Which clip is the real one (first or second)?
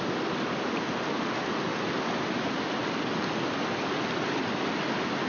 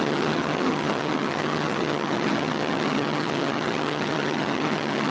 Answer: first